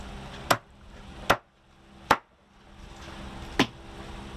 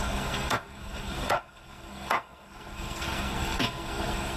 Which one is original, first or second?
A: first